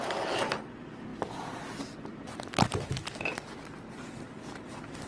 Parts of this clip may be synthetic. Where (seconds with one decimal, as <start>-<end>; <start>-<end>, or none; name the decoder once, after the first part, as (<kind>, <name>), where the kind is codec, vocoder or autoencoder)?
0.0-1.1 (vocoder, BigVGAN v2); 1.8-5.1